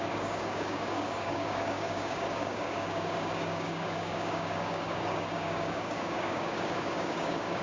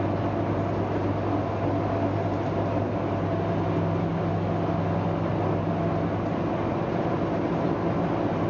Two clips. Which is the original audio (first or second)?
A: second